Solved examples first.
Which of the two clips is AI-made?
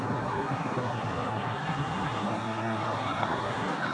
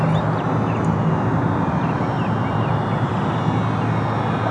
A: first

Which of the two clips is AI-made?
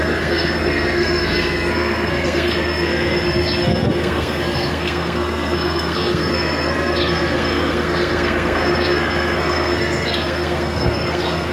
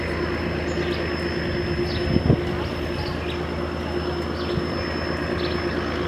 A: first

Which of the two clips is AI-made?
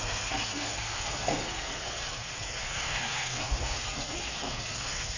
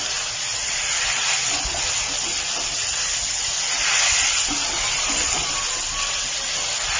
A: first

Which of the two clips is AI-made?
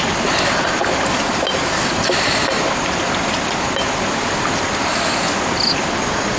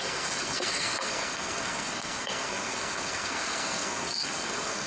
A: second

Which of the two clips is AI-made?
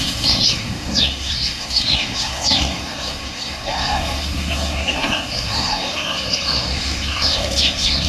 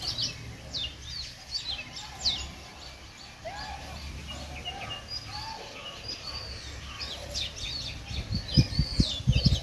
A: first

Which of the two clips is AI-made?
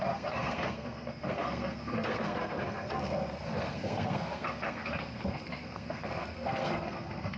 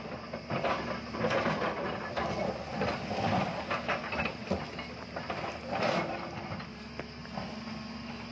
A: first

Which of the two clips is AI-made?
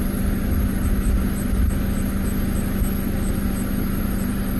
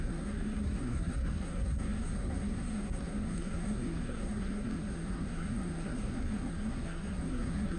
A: second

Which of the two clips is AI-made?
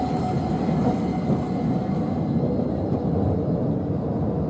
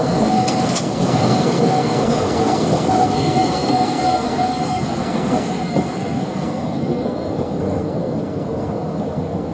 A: second